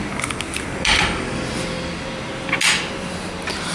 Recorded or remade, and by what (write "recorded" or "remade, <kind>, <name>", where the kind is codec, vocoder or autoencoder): recorded